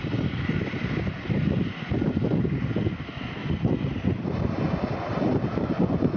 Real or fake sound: real